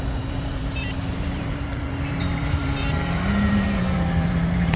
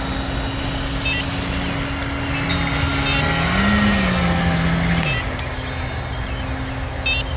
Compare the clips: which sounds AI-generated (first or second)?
first